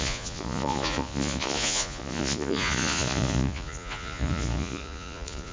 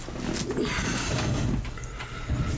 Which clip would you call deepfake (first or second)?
first